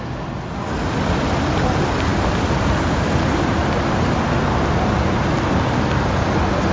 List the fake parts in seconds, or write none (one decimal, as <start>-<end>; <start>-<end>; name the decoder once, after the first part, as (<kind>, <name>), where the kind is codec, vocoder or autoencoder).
none